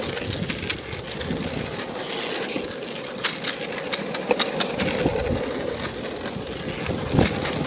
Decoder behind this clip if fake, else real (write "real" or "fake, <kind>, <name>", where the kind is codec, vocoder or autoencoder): real